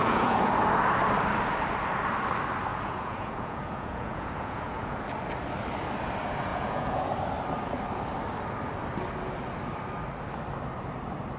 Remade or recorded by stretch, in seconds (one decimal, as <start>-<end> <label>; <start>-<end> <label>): 0.0-0.5 remade; 0.5-2.7 recorded; 2.7-5.0 remade; 5.0-6.5 recorded; 6.5-7.1 remade; 7.1-11.4 recorded